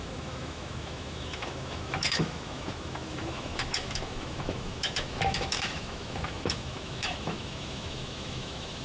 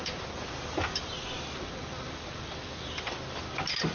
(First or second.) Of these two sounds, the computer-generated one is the first